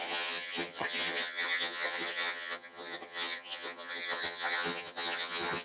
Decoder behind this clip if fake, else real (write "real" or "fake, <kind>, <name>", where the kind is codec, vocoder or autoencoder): fake, vocoder, HiFi-GAN